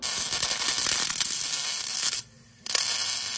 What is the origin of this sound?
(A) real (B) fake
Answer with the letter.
A